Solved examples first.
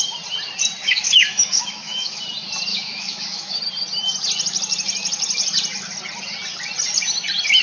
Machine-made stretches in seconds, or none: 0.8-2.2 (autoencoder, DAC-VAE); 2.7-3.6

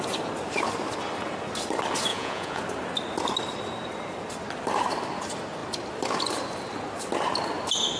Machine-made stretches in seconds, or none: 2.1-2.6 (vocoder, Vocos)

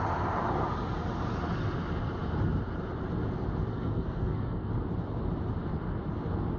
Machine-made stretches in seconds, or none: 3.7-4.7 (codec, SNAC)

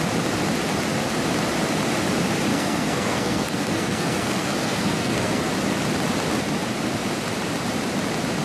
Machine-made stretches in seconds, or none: 2.5-5.5 (codec, SNAC)

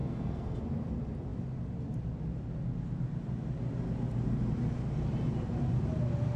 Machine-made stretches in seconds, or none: 0.0-0.6 (codec, SNAC)

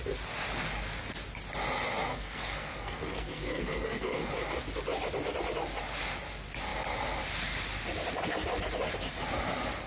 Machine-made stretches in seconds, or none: 2.1-4.3 (codec, SNAC)